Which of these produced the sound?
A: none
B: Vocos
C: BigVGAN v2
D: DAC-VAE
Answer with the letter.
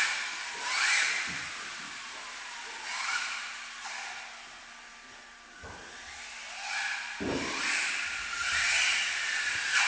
A